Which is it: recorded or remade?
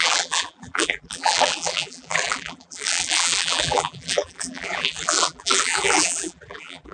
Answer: remade